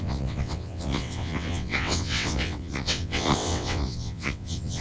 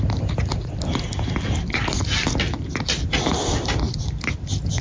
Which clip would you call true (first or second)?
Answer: second